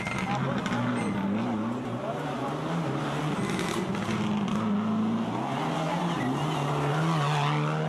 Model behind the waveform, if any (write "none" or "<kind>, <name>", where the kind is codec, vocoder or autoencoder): none